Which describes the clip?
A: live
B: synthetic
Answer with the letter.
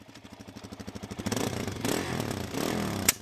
B